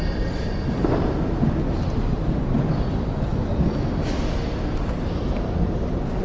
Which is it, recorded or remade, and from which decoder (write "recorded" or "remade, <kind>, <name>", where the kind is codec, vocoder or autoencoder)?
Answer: recorded